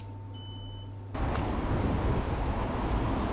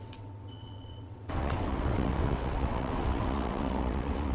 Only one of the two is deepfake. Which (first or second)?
second